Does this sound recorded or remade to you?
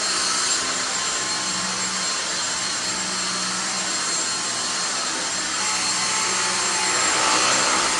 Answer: recorded